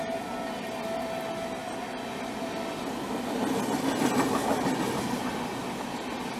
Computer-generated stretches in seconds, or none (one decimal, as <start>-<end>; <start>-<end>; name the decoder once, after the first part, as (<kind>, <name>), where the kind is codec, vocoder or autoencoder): none